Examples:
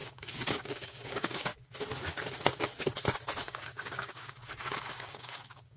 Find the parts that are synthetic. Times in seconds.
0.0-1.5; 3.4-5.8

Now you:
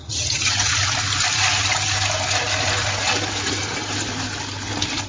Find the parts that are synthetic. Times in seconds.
0.0-0.7

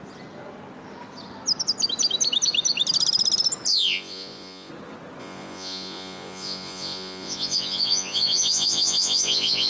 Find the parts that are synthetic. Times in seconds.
3.7-4.7; 5.2-9.7

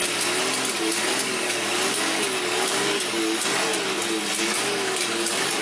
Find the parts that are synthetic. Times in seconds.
0.7-3.7; 4.4-5.6

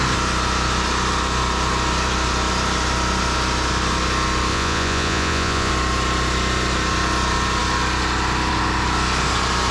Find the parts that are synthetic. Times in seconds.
4.5-5.7

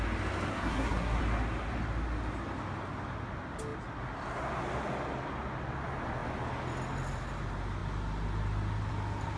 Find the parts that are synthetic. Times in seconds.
0.5-1.2